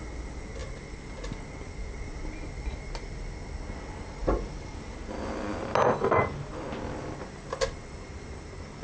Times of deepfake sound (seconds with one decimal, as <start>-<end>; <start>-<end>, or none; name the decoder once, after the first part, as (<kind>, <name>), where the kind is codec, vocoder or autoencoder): none